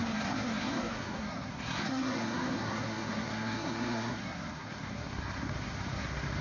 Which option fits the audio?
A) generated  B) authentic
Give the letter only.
A